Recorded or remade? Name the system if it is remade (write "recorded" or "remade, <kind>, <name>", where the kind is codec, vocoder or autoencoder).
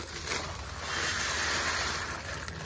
recorded